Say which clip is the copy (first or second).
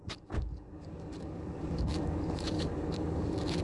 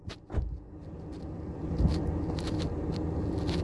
first